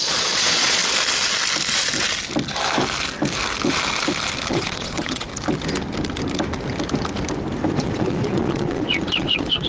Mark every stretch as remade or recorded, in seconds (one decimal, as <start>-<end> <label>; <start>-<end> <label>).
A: 0.0-0.8 remade; 0.8-4.5 recorded; 4.5-5.3 remade; 5.3-7.8 recorded; 7.8-9.7 remade